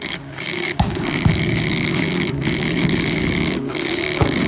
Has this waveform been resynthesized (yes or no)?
yes